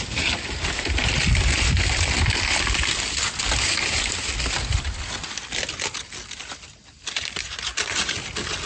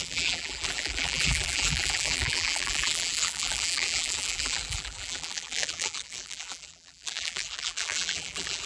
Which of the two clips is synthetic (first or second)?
second